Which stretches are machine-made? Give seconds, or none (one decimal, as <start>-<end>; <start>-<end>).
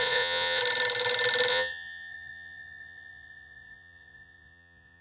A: 0.0-0.6; 1.5-5.0